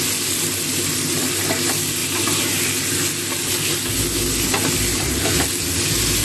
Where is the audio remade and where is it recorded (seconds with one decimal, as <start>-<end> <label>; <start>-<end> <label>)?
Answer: 0.0-6.2 recorded